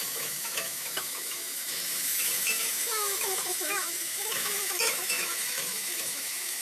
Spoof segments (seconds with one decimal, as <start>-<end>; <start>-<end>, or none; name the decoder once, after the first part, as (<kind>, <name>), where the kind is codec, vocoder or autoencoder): 0.0-6.6 (autoencoder, DAC-VAE)